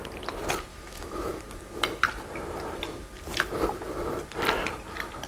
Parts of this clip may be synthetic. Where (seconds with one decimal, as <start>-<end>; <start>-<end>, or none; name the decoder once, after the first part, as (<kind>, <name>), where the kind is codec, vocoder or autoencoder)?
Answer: 0.7-1.4 (autoencoder, DAC-VAE)

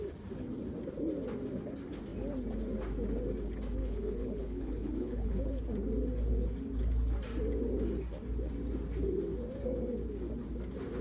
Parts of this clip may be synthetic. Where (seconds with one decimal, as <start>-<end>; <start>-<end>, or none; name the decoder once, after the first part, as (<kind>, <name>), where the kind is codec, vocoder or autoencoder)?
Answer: 3.8-5.6 (codec, HILCodec)

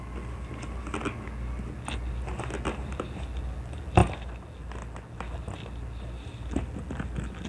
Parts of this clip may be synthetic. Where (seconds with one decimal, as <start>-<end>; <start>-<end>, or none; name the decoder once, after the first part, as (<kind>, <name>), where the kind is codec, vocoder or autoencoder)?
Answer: none

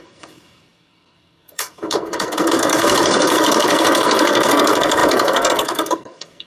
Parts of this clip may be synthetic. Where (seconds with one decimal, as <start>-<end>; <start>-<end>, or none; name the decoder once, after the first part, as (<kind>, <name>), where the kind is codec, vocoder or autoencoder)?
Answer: 0.0-6.5 (codec, SNAC)

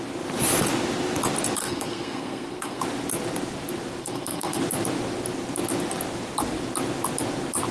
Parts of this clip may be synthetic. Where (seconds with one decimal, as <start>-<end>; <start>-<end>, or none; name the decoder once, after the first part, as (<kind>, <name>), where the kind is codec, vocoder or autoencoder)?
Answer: 1.6-2.8 (codec, SNAC); 4.0-4.6

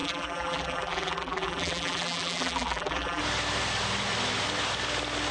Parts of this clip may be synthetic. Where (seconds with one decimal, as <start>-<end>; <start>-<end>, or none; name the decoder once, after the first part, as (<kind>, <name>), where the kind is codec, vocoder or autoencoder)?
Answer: 0.0-3.2 (vocoder, BigVGAN v2)

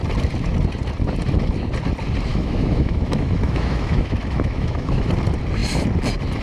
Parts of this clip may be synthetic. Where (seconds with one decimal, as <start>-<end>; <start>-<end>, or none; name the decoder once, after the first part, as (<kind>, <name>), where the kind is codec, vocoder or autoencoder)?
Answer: 2.3-5.1 (autoencoder, DAC-VAE)

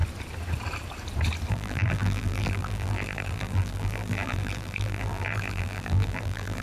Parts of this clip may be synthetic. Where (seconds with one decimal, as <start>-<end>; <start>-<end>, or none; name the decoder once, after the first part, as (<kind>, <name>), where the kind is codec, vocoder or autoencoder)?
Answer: 1.5-6.6 (vocoder, BigVGAN v2)